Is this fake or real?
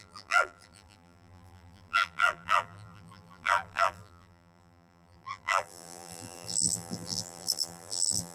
fake